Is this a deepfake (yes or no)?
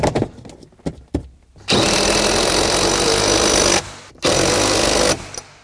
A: no